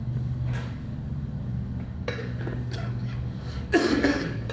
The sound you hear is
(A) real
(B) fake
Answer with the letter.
B